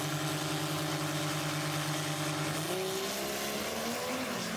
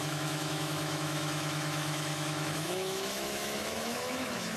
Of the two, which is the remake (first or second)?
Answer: second